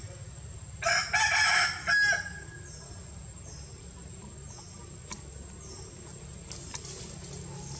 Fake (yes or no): no